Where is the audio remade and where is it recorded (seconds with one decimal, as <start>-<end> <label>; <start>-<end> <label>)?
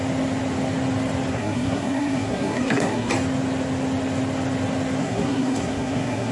0.0-1.3 recorded; 1.3-3.1 remade; 3.1-5.0 recorded; 5.0-6.3 remade